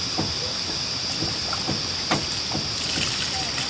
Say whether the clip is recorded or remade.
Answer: recorded